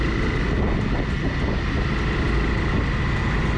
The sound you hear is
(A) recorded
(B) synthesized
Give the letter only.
A